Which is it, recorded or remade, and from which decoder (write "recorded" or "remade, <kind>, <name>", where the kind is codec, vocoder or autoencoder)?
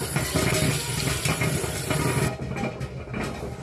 recorded